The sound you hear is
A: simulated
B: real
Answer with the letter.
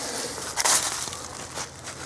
B